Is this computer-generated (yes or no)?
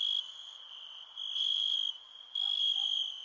no